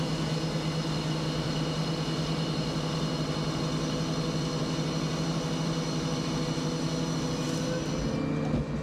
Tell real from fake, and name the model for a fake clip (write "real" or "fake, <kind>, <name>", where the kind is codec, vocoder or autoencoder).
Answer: real